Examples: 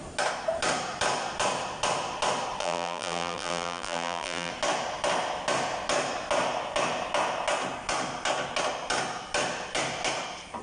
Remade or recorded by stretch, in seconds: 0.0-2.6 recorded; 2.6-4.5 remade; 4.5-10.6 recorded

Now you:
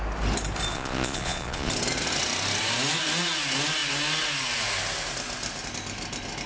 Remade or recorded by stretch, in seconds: 0.0-0.7 recorded; 0.7-1.7 remade; 1.7-6.5 recorded